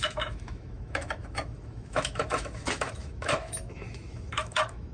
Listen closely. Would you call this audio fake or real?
fake